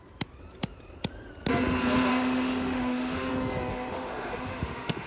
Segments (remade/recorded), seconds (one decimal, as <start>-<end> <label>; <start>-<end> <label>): 0.0-2.1 recorded; 2.1-3.3 remade; 3.3-3.7 recorded; 3.7-5.1 remade